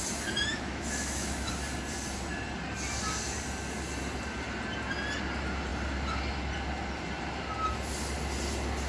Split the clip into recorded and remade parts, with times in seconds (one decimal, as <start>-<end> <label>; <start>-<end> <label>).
0.0-0.5 recorded; 0.5-1.5 remade; 1.5-8.9 recorded